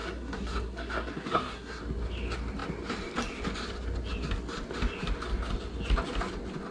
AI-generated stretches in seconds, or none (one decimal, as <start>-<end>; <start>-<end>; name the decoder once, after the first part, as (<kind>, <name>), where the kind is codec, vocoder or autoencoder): 0.0-1.8 (codec, SNAC)